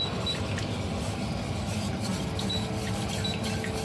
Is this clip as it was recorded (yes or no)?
yes